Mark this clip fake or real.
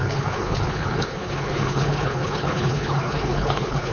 fake